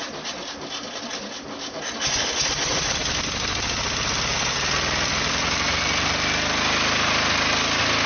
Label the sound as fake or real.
real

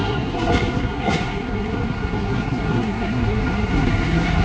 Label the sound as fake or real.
fake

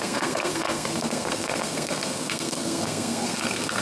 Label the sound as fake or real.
fake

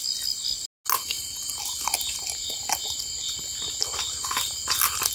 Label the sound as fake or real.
real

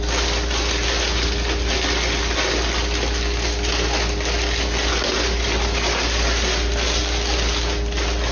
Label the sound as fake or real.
real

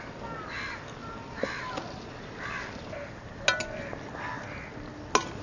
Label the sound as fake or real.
real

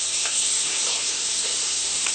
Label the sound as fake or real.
fake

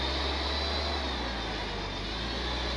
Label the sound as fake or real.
real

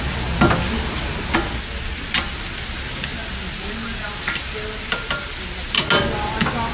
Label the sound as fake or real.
real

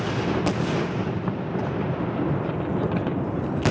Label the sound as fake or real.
real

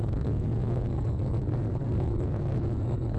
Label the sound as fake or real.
fake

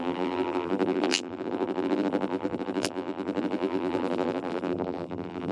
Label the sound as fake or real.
fake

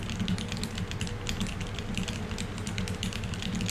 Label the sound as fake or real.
real